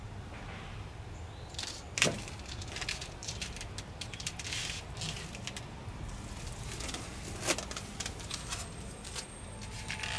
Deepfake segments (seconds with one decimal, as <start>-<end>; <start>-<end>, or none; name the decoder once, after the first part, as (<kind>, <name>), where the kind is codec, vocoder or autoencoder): none